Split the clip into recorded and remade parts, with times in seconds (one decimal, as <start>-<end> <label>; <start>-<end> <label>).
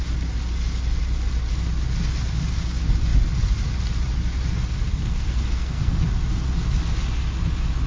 0.0-4.9 recorded; 4.9-6.1 remade; 6.1-7.9 recorded